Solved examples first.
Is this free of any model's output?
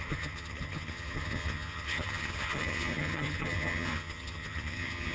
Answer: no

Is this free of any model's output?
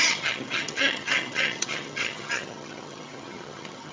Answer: no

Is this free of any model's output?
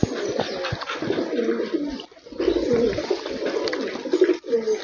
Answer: yes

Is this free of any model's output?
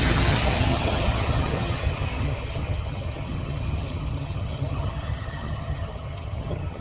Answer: no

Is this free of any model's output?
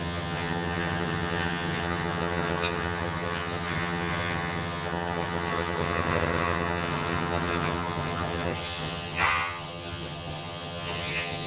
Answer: no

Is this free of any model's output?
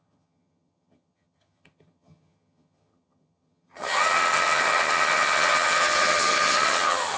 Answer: no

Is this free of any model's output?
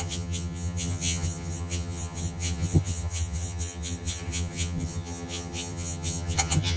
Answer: no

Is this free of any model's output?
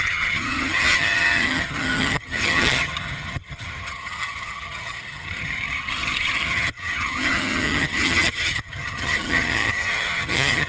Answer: no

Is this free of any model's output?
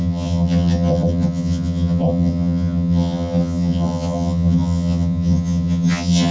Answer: no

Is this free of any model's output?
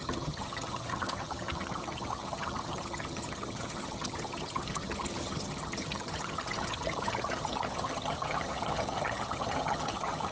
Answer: no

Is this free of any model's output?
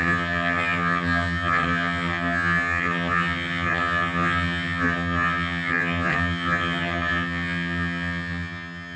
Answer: no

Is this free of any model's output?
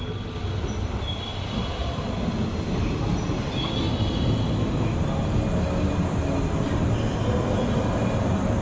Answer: yes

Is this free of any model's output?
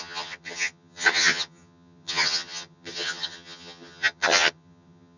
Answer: no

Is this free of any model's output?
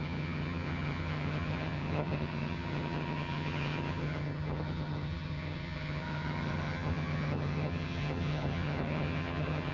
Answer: no